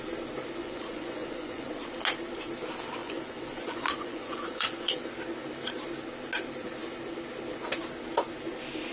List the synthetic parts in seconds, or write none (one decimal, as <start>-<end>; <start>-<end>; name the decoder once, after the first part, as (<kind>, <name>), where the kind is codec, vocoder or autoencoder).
0.6-1.7 (vocoder, Vocos); 3.0-5.1